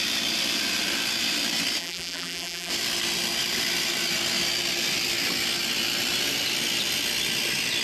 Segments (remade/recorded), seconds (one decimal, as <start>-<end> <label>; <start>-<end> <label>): 0.0-1.8 recorded; 1.8-2.7 remade; 2.7-7.8 recorded